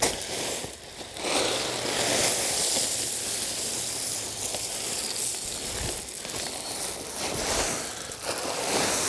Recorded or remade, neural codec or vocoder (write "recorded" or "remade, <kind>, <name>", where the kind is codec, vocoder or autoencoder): recorded